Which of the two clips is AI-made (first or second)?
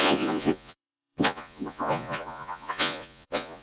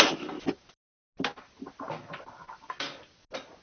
first